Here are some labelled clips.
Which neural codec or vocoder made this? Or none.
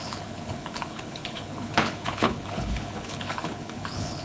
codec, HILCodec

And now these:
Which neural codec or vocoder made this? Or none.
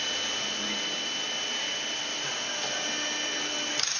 none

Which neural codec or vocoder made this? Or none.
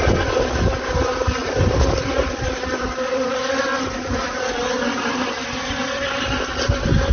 none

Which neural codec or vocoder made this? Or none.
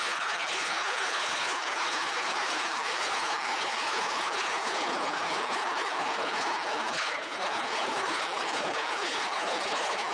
codec, HILCodec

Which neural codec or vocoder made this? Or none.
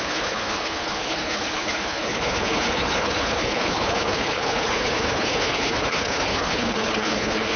codec, HILCodec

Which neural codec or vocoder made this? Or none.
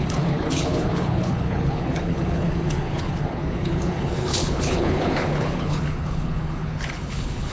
codec, HILCodec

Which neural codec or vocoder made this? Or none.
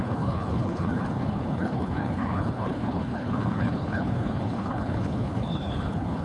codec, HILCodec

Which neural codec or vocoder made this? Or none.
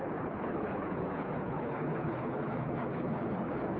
codec, HILCodec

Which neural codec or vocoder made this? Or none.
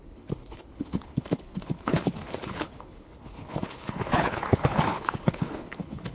codec, HILCodec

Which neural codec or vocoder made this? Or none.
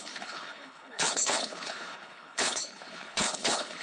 codec, HILCodec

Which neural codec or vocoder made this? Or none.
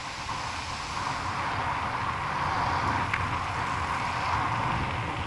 none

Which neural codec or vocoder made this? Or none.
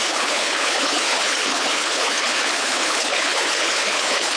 codec, HILCodec